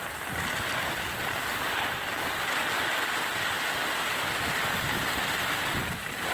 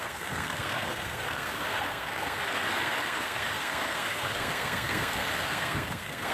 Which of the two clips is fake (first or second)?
second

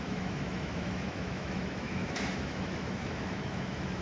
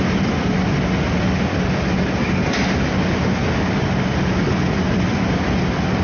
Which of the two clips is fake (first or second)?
first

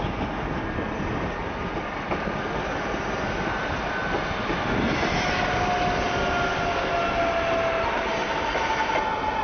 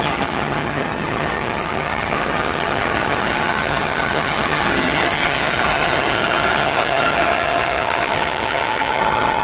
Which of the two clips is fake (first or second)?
second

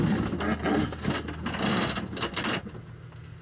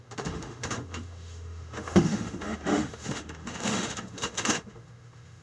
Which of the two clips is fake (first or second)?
second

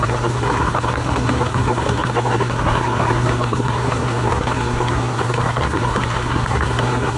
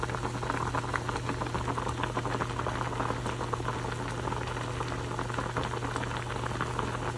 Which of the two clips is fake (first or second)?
first